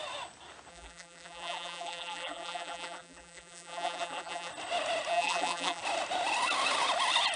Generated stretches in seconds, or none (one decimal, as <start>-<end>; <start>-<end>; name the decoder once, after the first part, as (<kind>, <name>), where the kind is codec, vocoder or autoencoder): 0.7-4.5 (vocoder, BigVGAN v2); 5.1-5.8